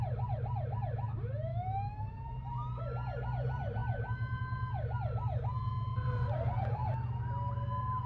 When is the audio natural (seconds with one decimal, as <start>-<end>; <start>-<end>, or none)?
0.0-1.5; 2.0-8.1